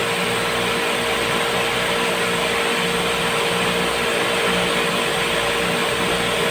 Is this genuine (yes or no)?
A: yes